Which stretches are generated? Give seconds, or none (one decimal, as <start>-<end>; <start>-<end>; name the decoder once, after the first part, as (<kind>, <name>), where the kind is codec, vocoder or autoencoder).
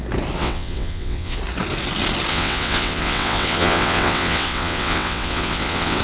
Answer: 0.4-1.4 (vocoder, WaveNeXt); 2.3-6.0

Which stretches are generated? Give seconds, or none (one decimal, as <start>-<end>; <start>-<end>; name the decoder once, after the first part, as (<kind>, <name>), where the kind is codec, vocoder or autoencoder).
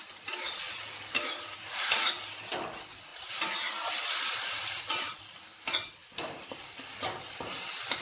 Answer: none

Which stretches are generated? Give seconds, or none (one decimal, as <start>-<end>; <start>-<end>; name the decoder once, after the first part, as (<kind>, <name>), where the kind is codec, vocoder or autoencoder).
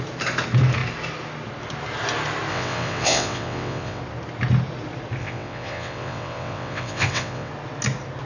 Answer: 2.5-4.0 (vocoder, WaveNeXt); 5.2-7.5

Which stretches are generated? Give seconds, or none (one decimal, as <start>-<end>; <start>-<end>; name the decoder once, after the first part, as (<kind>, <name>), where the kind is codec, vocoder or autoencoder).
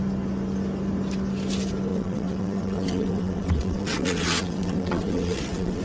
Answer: 1.9-5.8 (vocoder, WaveNeXt)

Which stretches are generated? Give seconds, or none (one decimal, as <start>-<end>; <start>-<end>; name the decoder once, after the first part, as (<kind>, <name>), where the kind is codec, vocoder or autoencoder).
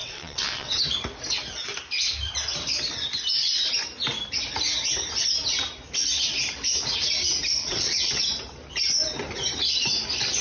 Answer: 0.0-0.8 (vocoder, WaveNeXt); 7.6-8.2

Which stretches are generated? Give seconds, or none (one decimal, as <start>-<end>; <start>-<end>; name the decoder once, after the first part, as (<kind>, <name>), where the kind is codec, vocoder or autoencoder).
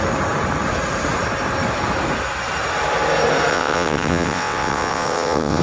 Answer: 3.5-5.6 (vocoder, WaveNeXt)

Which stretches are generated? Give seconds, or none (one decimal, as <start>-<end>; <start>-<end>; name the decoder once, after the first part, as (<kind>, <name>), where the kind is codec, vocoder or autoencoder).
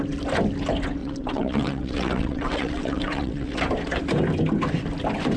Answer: 1.0-3.6 (vocoder, WaveNeXt)